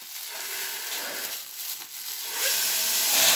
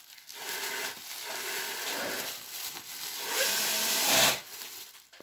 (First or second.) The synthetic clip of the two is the second